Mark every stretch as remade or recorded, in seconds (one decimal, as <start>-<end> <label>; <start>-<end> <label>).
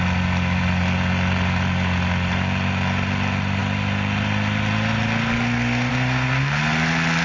0.0-7.2 recorded